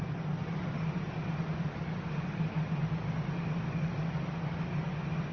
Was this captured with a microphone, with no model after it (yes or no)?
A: yes